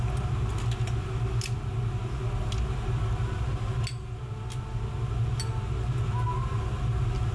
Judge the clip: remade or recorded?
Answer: recorded